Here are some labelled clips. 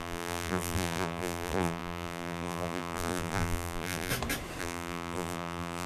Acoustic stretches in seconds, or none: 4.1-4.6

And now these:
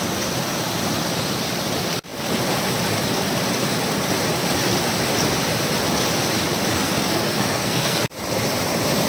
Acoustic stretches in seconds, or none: 0.0-6.7; 8.1-9.1

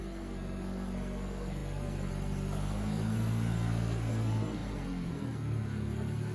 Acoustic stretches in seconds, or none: none

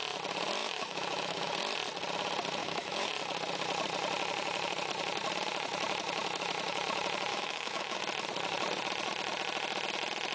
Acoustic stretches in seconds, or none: 0.0-0.6; 1.5-2.6; 3.1-7.3; 8.0-10.3

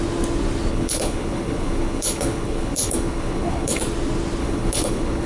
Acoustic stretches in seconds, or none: 0.0-0.7; 3.8-4.4